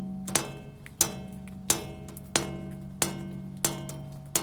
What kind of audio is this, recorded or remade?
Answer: recorded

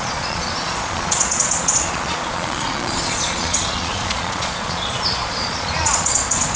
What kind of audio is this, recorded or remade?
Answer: remade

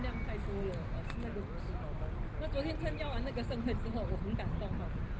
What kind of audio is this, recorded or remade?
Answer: recorded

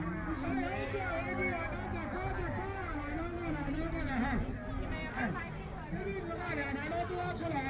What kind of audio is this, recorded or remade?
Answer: recorded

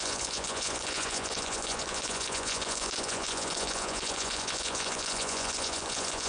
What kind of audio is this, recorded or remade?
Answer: remade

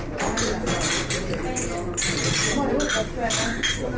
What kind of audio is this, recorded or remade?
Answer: recorded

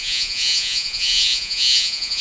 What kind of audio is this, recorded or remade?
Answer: remade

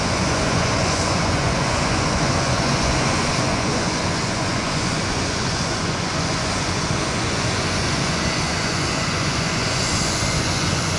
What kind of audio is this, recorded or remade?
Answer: remade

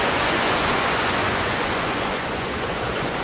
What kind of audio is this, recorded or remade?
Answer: remade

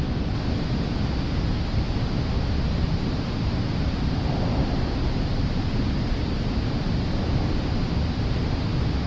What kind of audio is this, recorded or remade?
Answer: recorded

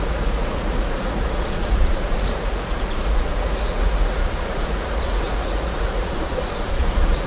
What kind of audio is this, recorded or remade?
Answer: remade